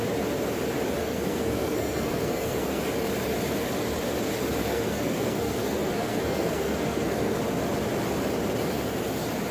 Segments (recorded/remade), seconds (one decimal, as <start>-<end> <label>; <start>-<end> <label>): 0.0-1.0 recorded; 1.0-2.8 remade; 2.8-4.6 recorded; 4.6-7.4 remade; 7.4-9.5 recorded